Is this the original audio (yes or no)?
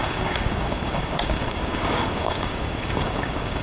no